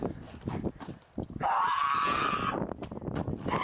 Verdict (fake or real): real